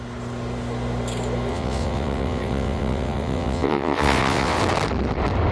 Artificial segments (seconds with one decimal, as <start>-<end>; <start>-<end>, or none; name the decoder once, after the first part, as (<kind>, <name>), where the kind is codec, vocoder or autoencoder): 1.5-4.6 (vocoder, WaveNeXt)